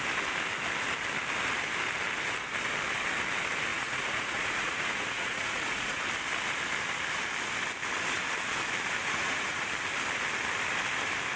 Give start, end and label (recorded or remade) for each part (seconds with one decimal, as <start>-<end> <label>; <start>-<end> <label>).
0.0-3.7 recorded; 3.7-6.0 remade; 6.0-9.0 recorded; 9.0-9.7 remade; 9.7-11.4 recorded